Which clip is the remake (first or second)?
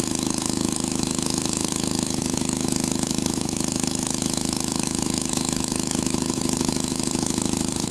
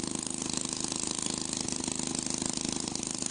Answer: first